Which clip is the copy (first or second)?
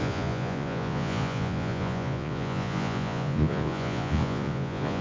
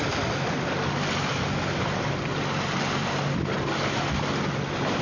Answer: first